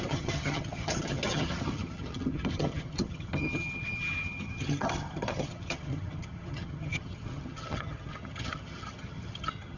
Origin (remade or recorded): remade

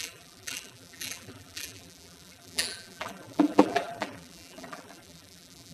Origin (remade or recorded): remade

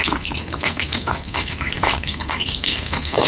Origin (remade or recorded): remade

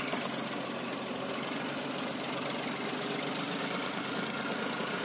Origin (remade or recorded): recorded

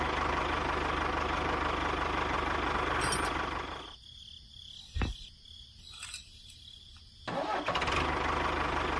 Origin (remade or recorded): recorded